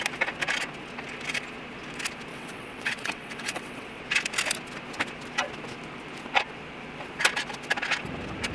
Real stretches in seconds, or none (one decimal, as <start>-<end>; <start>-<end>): 0.0-2.3; 4.0-8.5